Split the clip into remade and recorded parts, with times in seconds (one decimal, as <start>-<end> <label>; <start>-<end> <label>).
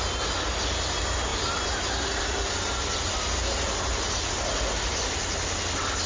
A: 0.0-6.1 recorded